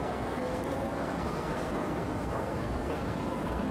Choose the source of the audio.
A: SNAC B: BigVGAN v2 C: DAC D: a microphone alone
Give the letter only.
A